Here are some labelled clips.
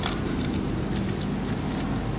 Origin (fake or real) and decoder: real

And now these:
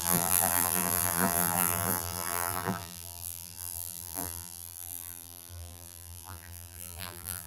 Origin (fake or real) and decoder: fake, vocoder, BigVGAN v2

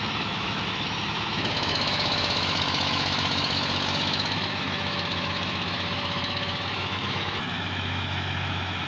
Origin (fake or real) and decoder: fake, autoencoder, DAC-VAE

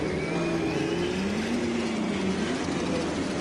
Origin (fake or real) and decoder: real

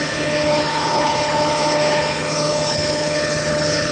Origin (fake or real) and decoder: fake, codec, HILCodec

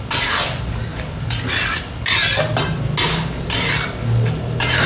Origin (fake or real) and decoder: real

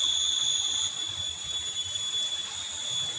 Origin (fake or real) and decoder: real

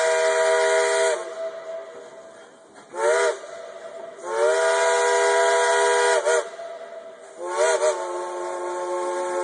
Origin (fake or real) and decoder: real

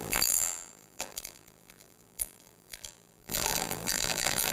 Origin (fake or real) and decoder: fake, vocoder, BigVGAN v2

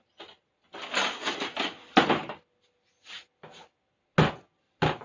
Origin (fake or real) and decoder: real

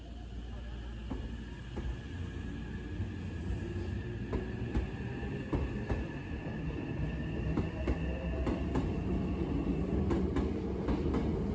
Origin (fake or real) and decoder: real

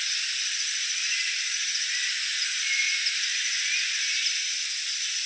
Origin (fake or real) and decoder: real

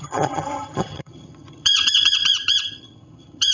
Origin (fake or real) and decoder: fake, vocoder, HiFi-GAN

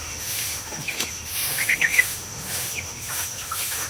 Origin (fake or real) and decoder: fake, autoencoder, DAC-VAE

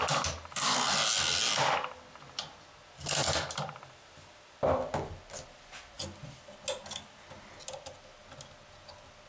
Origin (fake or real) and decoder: real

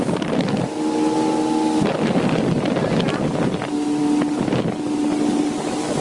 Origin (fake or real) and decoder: real